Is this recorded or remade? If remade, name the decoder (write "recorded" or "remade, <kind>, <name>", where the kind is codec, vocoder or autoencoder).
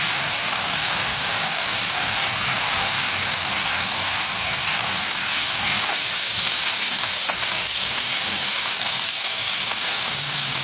remade, codec, DAC